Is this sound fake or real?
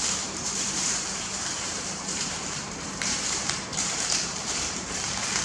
fake